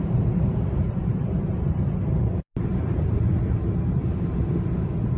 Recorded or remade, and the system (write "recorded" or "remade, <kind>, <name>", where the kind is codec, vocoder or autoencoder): remade, vocoder, BigVGAN v2